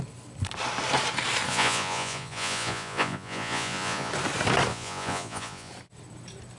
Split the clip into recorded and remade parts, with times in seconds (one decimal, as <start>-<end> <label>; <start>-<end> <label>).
0.0-1.5 recorded; 1.5-4.1 remade; 4.1-4.7 recorded; 4.7-5.7 remade; 5.7-6.6 recorded